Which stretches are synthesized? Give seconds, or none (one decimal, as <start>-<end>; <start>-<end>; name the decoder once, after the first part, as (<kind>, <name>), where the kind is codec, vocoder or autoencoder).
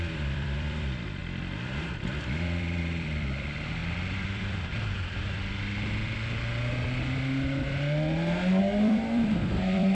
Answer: 0.0-5.2 (vocoder, BigVGAN v2); 8.6-9.9